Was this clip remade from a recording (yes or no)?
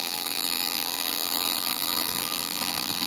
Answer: yes